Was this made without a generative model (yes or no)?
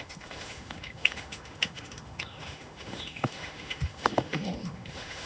no